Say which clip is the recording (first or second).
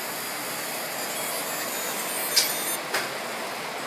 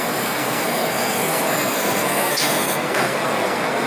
first